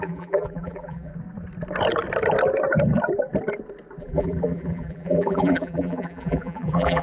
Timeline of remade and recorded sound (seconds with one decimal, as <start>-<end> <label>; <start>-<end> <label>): 0.0-1.1 remade; 1.1-4.0 recorded; 4.0-7.0 remade